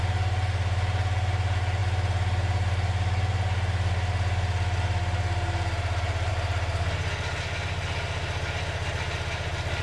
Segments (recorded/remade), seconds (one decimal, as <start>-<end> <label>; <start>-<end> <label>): 0.0-9.8 recorded